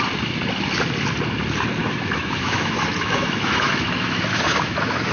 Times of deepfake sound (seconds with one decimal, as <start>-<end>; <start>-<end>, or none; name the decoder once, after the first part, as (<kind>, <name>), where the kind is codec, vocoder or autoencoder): 1.8-5.1 (autoencoder, DAC-VAE)